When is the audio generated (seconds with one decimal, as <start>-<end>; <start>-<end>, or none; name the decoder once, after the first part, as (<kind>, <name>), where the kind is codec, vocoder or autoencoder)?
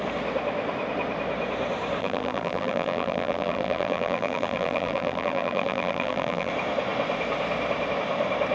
2.0-6.5 (vocoder, BigVGAN v2)